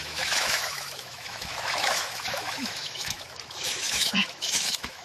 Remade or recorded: remade